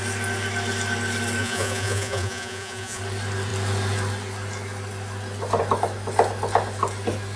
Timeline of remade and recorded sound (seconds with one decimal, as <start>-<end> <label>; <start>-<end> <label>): 0.0-1.4 recorded; 1.4-3.0 remade; 3.0-7.4 recorded